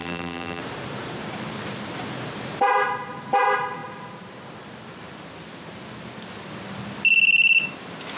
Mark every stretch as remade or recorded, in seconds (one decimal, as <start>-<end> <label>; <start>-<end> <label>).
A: 0.0-0.6 remade; 0.6-8.2 recorded